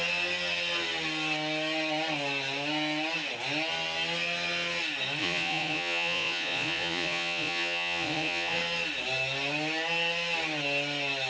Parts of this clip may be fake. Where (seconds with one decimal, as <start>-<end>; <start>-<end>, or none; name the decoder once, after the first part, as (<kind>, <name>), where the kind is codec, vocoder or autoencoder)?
5.2-8.6 (vocoder, Vocos)